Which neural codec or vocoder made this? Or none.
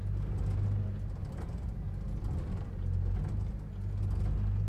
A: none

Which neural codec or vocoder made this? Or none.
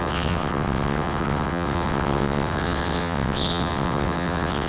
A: vocoder, WaveNeXt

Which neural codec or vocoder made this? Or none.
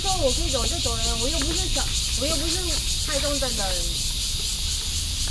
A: none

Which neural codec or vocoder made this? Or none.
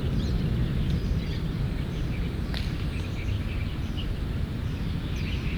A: none